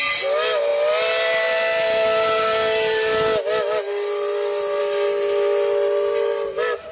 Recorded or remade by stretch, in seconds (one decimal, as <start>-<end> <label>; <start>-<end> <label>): 0.0-6.9 recorded